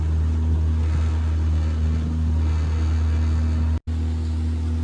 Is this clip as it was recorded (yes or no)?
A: yes